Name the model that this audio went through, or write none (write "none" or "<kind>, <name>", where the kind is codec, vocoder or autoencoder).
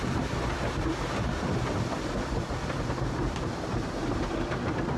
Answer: none